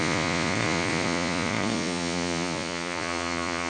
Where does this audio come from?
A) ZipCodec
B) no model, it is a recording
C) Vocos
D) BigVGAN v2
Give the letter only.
C